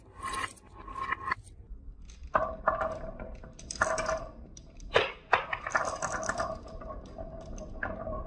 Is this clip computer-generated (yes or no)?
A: no